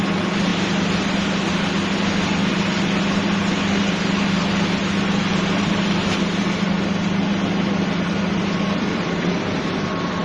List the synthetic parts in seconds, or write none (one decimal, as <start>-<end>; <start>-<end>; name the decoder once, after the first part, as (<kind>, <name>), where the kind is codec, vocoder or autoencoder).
5.3-6.1 (vocoder, BigVGAN v2)